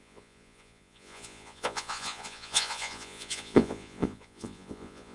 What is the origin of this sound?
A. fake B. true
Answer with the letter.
A